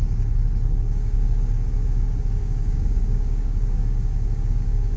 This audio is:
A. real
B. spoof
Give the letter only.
B